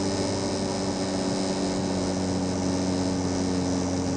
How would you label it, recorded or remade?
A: recorded